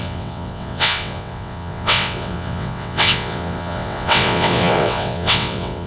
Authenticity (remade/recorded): remade